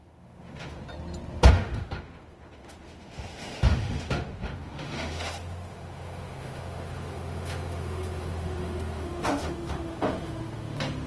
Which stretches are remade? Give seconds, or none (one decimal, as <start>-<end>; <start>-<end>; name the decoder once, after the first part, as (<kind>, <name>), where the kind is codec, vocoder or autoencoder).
0.0-0.8 (autoencoder, DAC-VAE); 1.5-11.1